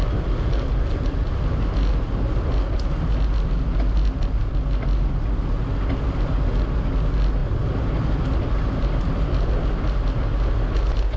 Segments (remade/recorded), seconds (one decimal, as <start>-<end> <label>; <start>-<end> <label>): 0.0-11.2 recorded